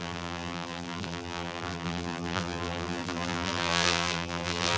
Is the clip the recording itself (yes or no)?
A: no